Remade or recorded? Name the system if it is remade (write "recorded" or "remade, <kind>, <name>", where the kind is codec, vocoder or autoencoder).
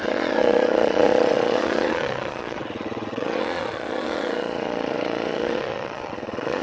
remade, vocoder, Vocos